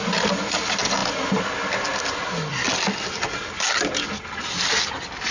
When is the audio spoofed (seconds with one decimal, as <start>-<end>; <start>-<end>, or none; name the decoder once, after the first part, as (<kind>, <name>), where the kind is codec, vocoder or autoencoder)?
none